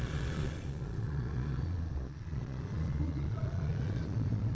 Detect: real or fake fake